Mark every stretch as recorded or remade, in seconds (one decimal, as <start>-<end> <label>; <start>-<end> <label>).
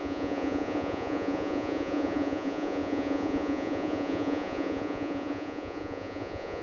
0.0-6.6 remade